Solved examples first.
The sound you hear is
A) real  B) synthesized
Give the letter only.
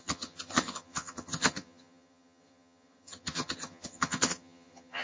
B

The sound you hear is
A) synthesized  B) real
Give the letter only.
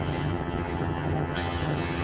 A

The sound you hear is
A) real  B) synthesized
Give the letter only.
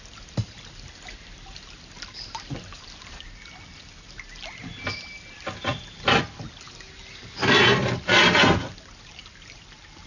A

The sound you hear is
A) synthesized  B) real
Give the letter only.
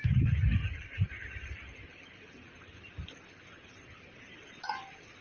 B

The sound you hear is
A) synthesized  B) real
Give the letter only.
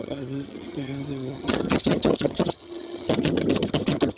A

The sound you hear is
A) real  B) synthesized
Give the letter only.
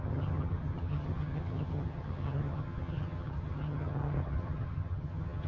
B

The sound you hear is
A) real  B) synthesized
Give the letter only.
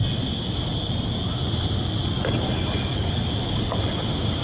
A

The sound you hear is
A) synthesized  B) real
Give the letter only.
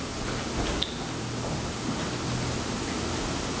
B